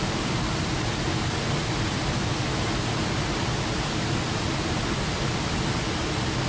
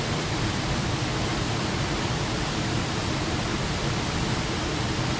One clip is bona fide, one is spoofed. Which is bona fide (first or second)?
first